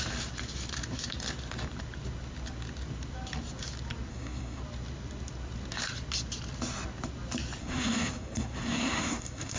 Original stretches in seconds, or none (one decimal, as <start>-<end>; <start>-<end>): 0.0-4.1; 4.6-7.6